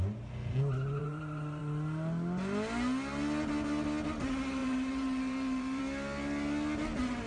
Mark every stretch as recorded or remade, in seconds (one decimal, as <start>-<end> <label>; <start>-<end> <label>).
0.0-1.0 recorded; 1.0-1.6 remade; 1.6-4.6 recorded; 4.6-5.8 remade; 5.8-7.3 recorded